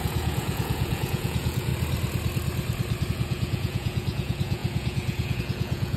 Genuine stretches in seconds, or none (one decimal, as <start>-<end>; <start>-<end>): 1.7-3.1